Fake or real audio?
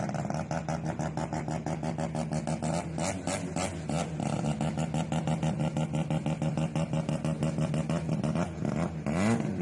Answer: real